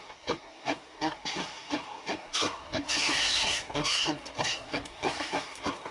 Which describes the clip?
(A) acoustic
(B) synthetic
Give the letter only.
B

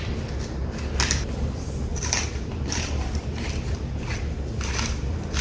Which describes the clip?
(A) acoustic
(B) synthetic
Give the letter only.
A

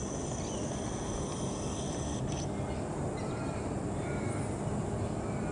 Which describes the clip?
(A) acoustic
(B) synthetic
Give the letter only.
A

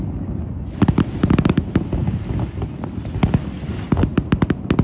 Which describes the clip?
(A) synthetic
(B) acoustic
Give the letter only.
B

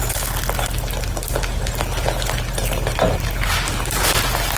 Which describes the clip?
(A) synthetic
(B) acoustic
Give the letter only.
B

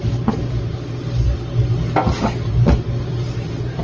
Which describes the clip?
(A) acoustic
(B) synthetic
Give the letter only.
A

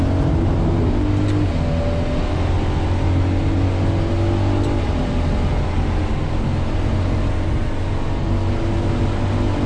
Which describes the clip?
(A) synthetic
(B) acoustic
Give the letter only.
B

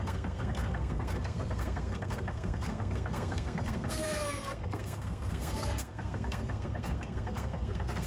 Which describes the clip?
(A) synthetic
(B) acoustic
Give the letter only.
A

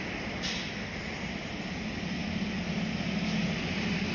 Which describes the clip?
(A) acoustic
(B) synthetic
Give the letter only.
A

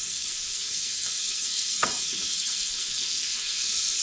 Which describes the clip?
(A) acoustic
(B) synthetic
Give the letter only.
B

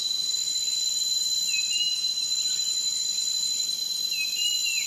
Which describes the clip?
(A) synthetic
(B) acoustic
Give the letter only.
B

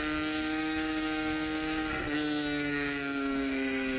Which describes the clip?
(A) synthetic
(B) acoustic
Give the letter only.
A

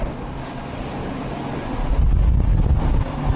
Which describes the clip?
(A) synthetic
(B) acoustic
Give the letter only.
B